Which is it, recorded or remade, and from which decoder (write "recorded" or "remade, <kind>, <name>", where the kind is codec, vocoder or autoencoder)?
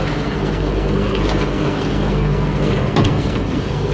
remade, codec, SNAC